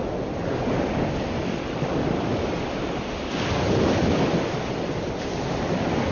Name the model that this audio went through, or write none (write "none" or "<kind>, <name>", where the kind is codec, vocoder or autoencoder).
none